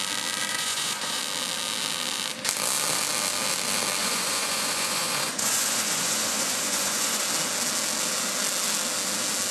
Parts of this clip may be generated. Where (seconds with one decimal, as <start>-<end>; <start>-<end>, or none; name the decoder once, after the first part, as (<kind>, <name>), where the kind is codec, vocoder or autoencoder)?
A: 0.5-1.2 (vocoder, Vocos); 4.0-7.2